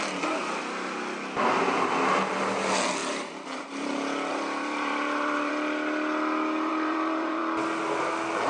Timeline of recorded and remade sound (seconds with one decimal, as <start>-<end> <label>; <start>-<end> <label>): 0.0-3.0 recorded; 3.0-5.5 remade; 5.5-6.7 recorded; 6.7-7.4 remade; 7.4-8.5 recorded